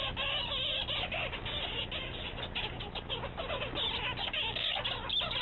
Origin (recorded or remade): recorded